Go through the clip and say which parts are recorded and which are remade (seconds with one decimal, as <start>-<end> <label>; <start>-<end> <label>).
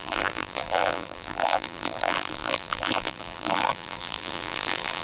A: 0.0-5.0 remade